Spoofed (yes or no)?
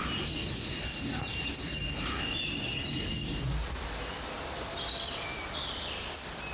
no